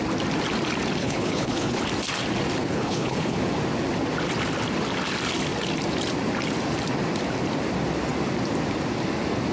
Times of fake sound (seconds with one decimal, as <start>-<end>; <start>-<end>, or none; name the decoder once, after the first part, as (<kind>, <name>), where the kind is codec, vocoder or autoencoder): 1.0-1.8 (codec, HILCodec); 2.6-3.4